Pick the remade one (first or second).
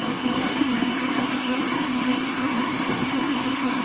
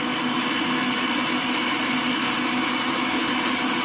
first